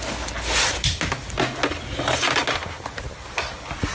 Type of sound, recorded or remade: recorded